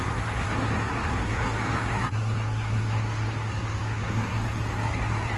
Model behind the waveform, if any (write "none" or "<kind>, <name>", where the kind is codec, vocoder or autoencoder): codec, SNAC